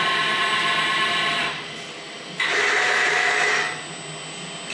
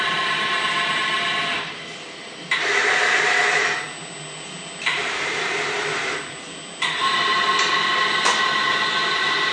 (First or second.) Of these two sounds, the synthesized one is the second